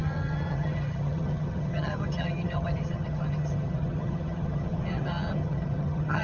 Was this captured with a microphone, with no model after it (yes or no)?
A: no